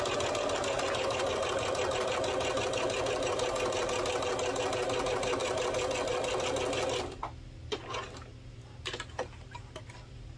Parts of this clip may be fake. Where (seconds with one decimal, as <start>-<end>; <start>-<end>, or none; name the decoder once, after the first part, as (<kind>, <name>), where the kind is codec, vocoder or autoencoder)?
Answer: none